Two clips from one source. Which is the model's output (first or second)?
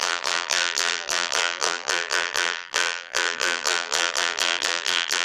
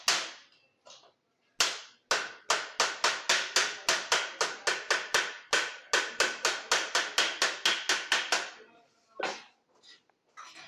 first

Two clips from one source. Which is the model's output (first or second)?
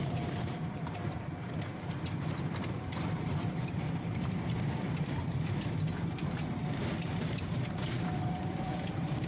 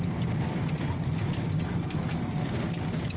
first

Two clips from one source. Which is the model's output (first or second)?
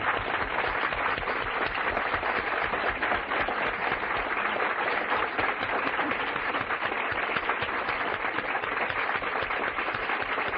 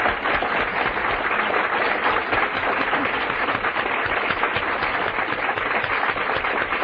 first